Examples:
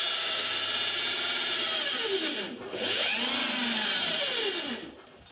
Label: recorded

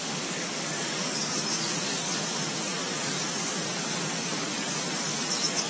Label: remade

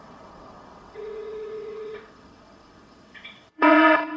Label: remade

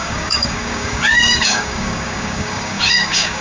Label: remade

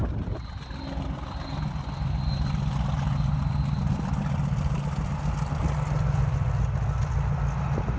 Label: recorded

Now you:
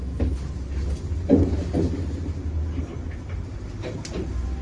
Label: recorded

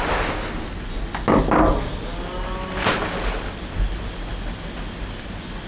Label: recorded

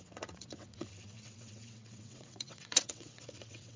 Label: remade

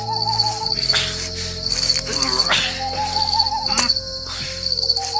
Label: recorded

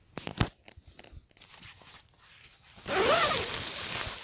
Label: recorded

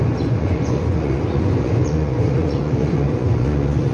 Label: remade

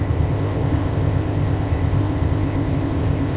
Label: remade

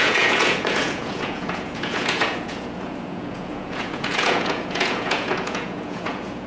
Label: remade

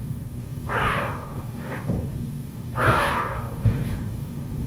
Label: remade